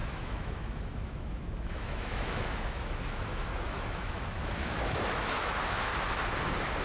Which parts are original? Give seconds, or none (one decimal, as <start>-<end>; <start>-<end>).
5.9-6.8